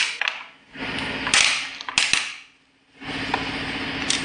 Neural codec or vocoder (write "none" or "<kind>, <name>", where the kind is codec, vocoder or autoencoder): none